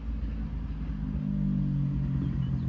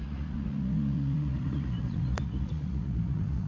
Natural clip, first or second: first